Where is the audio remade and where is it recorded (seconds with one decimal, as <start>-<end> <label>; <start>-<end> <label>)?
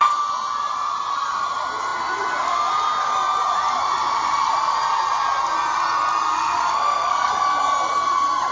0.0-6.3 recorded; 6.3-7.3 remade; 7.3-8.5 recorded